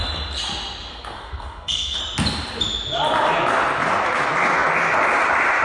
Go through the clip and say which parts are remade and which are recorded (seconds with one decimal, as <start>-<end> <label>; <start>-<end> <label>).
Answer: 0.0-0.9 recorded; 0.9-2.0 remade; 2.0-5.6 recorded